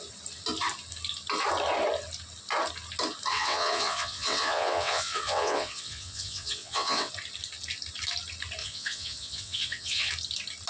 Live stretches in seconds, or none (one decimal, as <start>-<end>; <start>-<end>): 0.0-3.3; 7.1-8.6; 10.1-10.7